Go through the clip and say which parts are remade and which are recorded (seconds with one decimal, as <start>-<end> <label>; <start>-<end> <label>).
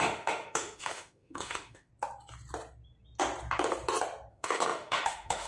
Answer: 0.0-1.9 remade; 1.9-4.3 recorded; 4.3-5.5 remade